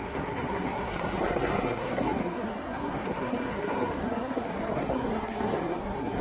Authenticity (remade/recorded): remade